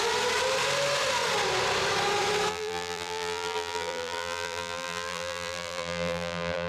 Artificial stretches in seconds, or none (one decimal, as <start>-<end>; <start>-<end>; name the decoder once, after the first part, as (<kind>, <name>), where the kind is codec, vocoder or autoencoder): 2.5-6.7 (vocoder, BigVGAN v2)